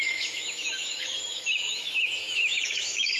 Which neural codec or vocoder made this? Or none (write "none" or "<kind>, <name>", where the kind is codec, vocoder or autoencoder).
autoencoder, DAC-VAE